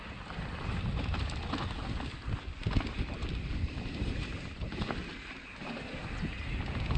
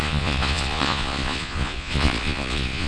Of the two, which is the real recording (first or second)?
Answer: first